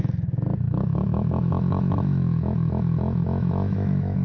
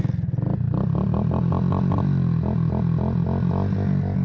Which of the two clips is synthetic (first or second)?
first